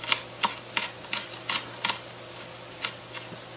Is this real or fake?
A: real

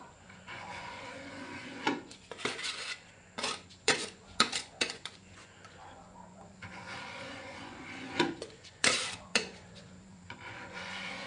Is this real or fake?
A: fake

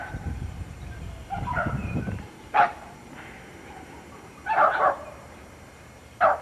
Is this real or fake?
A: fake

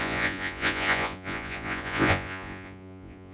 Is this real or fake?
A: fake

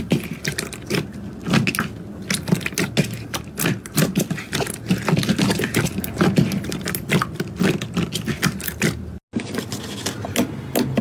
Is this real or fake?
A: real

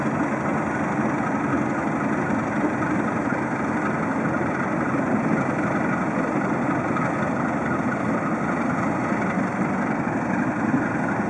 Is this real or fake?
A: real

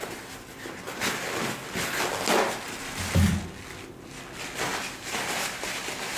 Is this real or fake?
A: real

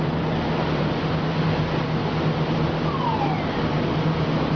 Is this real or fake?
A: real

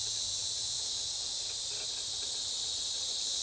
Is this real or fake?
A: real